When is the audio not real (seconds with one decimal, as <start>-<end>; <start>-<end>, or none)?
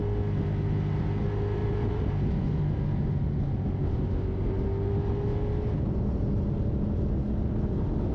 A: 1.6-2.3